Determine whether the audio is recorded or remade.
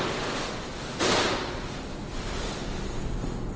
recorded